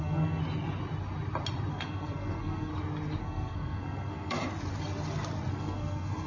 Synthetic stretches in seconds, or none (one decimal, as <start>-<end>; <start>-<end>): 0.0-0.4; 1.7-2.7; 3.2-4.4; 5.5-6.3